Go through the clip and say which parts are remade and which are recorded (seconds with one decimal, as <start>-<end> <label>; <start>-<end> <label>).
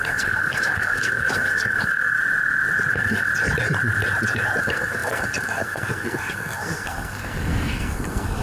0.0-2.2 remade; 2.2-2.9 recorded; 2.9-3.3 remade; 3.3-4.6 recorded; 4.6-8.4 remade